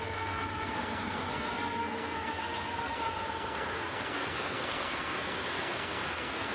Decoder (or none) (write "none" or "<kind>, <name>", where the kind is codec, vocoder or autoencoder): codec, SNAC